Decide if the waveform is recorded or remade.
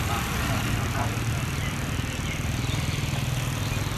recorded